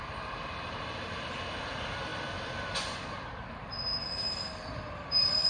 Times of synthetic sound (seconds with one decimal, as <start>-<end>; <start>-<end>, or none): none